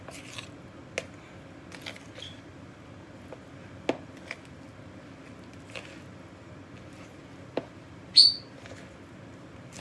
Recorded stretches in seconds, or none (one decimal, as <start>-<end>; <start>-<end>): 0.0-9.8